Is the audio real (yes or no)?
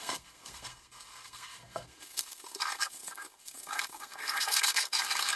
no